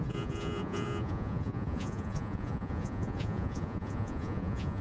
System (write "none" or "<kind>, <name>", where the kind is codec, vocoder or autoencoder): vocoder, Vocos